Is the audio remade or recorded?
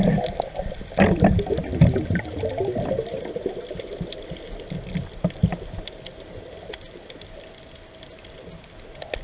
recorded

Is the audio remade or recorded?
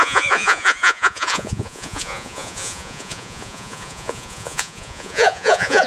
remade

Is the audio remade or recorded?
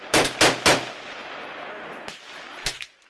recorded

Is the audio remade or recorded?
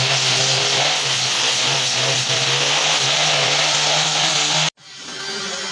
recorded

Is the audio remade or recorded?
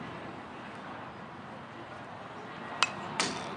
recorded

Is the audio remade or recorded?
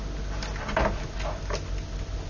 recorded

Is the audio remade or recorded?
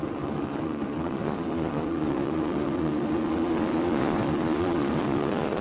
remade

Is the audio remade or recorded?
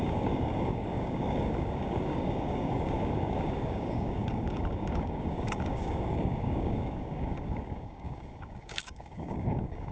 remade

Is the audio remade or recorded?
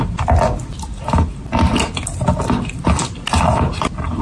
recorded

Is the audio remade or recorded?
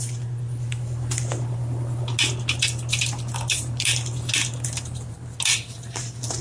recorded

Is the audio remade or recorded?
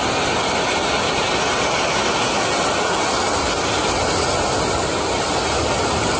recorded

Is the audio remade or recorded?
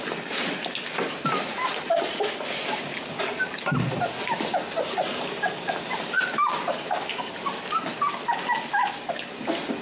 recorded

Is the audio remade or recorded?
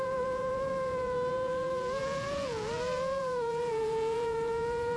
remade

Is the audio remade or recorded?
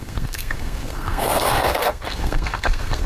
remade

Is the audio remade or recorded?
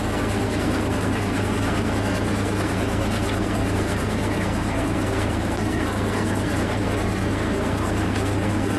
remade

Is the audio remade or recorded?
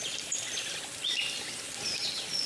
recorded